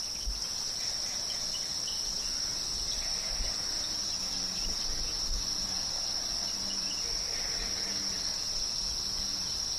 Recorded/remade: recorded